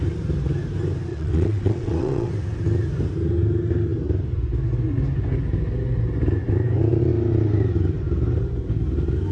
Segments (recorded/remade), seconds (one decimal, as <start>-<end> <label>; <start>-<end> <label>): 0.0-1.1 recorded; 1.1-2.3 remade; 2.3-9.3 recorded

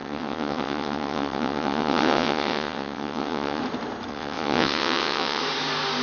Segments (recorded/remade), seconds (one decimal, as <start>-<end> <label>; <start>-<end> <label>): 0.0-3.6 remade; 3.6-4.1 recorded; 4.1-5.4 remade; 5.4-6.0 recorded

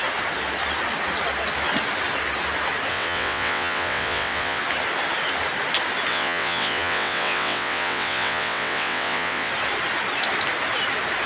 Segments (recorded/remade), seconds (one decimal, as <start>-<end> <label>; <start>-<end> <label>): 0.0-2.9 recorded; 2.9-4.6 remade; 4.6-6.1 recorded; 6.1-9.5 remade; 9.5-11.3 recorded

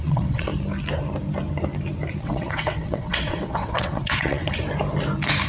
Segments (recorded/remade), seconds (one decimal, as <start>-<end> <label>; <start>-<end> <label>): 0.0-0.5 remade; 0.5-2.2 recorded; 2.2-4.4 remade; 4.4-5.5 recorded